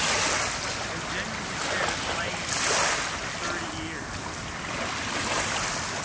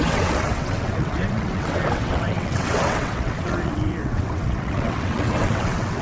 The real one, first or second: first